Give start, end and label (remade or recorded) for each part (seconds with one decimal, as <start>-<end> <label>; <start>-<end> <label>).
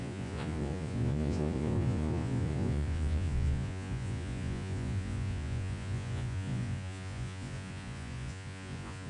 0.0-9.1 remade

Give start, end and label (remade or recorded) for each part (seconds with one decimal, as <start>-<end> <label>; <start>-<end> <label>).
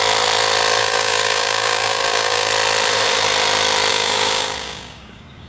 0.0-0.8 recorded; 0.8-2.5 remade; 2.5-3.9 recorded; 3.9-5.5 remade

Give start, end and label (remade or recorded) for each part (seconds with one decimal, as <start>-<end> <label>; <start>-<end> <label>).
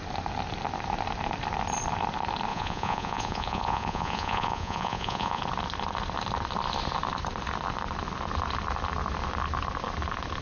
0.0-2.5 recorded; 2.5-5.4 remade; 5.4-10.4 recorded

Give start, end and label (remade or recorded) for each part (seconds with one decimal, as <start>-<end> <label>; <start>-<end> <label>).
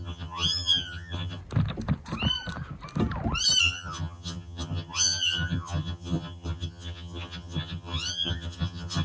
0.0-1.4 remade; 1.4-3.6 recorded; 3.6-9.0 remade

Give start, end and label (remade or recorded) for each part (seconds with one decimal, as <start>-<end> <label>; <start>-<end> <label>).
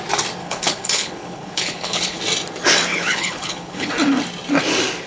0.0-0.4 recorded; 0.4-2.2 remade; 2.2-2.9 recorded; 2.9-3.9 remade; 3.9-5.1 recorded